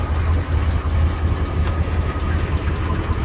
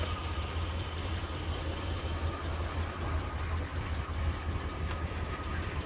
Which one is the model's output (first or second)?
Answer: second